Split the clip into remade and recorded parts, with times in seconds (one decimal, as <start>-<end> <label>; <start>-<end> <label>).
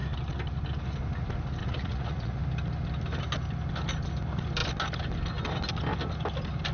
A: 0.0-1.6 recorded; 1.6-2.4 remade; 2.4-6.7 recorded